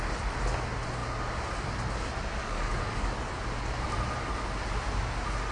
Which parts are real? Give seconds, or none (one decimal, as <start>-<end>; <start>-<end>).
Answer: 0.0-2.4; 3.3-5.5